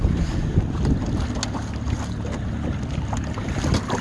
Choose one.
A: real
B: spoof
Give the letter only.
A